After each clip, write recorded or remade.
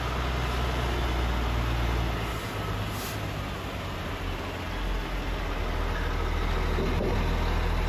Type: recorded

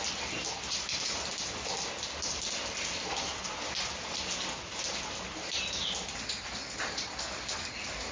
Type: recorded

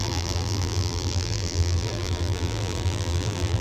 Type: remade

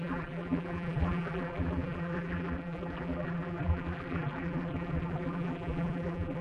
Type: remade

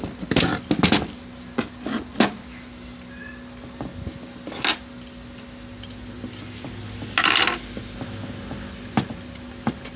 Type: recorded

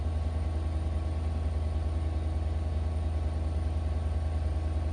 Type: recorded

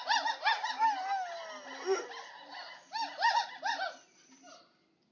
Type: recorded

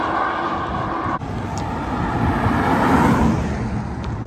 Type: recorded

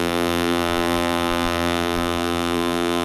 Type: remade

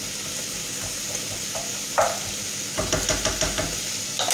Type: recorded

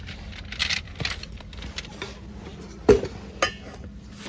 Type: recorded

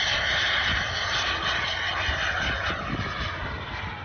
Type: recorded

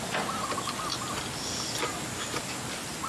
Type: recorded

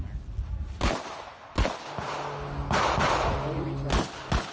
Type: recorded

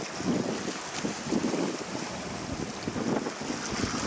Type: recorded